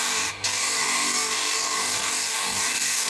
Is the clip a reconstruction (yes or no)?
yes